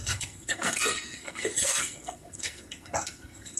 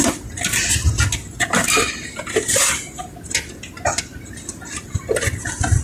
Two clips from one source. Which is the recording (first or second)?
second